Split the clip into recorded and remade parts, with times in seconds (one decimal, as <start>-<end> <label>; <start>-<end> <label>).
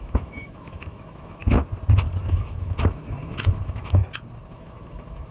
0.0-1.4 remade; 1.4-2.3 recorded; 2.3-4.0 remade; 4.0-4.5 recorded; 4.5-5.3 remade